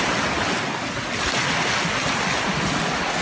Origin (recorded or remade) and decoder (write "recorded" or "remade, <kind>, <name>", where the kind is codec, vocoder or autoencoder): recorded